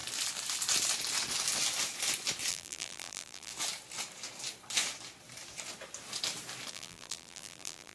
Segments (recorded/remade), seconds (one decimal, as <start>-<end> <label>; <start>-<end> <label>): 0.0-2.5 recorded; 2.5-3.5 remade; 3.5-6.7 recorded; 6.7-7.9 remade